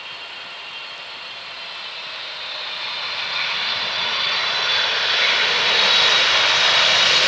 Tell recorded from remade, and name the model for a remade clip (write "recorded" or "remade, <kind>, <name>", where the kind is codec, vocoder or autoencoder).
recorded